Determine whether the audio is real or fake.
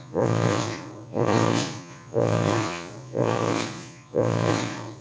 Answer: fake